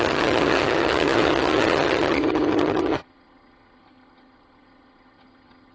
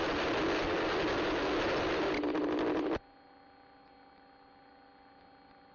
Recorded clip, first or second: second